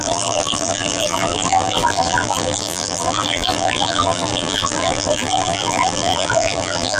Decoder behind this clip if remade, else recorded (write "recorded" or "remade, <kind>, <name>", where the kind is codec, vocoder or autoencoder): remade, vocoder, BigVGAN v2